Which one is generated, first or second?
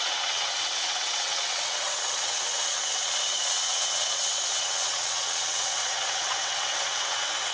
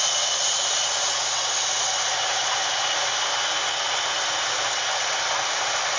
first